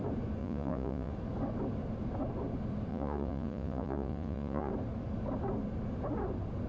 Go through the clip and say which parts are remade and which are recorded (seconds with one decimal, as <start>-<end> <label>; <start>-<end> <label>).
0.0-0.4 recorded; 0.4-1.1 remade; 1.1-2.9 recorded; 2.9-4.7 remade; 4.7-6.7 recorded